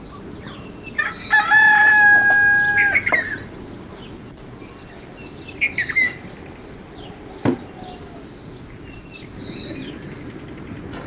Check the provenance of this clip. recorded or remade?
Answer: recorded